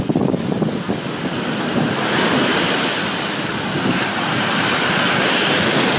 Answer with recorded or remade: recorded